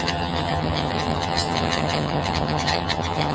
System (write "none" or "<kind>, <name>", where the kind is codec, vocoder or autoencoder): vocoder, HiFi-GAN